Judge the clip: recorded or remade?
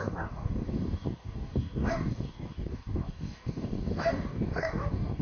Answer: remade